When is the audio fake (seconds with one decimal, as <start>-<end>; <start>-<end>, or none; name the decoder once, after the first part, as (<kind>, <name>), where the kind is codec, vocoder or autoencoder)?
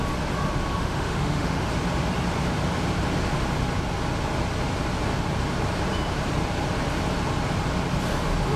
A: 0.7-1.7 (autoencoder, DAC-VAE)